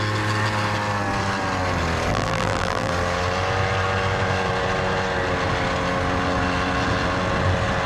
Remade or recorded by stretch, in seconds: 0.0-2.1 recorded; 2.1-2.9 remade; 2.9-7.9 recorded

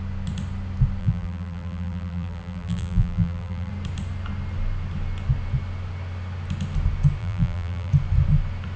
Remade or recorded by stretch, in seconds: 0.0-1.0 recorded; 1.0-3.7 remade; 3.7-7.2 recorded; 7.2-7.9 remade; 7.9-8.8 recorded

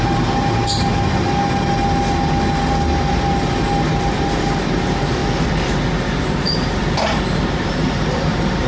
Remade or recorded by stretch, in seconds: 0.0-0.9 remade; 0.9-3.1 recorded; 3.1-5.2 remade; 5.2-6.2 recorded; 6.2-6.8 remade; 6.8-7.3 recorded; 7.3-8.7 remade

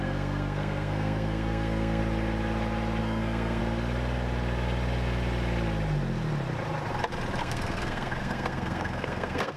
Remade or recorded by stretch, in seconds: 0.0-2.0 remade; 2.0-3.0 recorded; 3.0-3.6 remade; 3.6-7.4 recorded; 7.4-9.6 remade

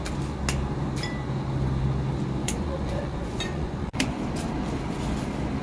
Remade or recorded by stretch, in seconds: 0.0-2.4 recorded; 2.4-4.2 remade; 4.2-5.6 recorded